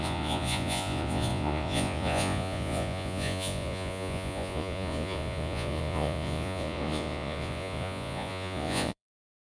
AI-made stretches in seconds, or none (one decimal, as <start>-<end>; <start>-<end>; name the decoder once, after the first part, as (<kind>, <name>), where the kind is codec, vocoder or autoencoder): 0.0-9.5 (vocoder, Vocos)

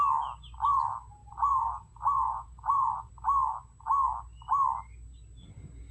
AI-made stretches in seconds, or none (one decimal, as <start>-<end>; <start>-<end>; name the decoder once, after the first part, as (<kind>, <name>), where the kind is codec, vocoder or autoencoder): 1.2-3.1 (vocoder, Vocos)

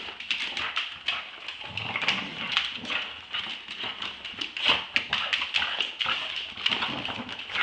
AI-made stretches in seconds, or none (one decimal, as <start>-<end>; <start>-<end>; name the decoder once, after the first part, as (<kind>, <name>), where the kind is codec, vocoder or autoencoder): none

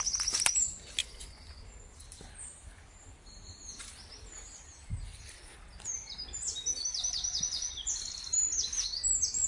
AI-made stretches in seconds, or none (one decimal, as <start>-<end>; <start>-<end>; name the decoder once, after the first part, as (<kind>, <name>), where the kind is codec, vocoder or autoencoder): 1.0-1.6 (vocoder, Vocos); 7.3-7.9